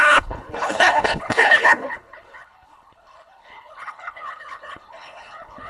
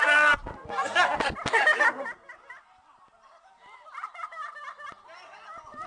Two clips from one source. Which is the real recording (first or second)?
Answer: second